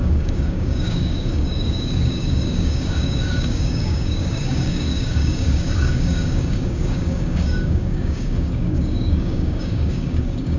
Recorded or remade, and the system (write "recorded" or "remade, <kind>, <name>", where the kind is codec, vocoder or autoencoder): remade, codec, DAC